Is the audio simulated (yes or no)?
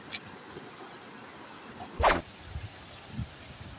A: no